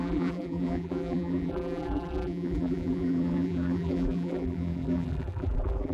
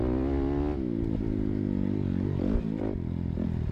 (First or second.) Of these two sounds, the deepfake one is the first